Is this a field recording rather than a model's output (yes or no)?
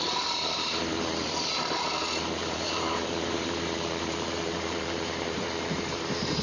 no